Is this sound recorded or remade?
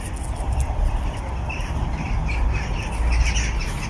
recorded